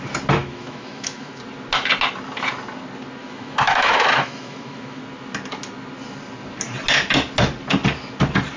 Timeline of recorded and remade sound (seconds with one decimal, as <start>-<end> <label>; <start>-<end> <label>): 0.0-0.4 recorded; 0.4-1.4 remade; 1.4-3.2 recorded; 3.2-5.0 remade; 5.0-8.6 recorded